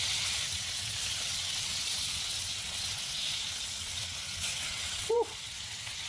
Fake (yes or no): yes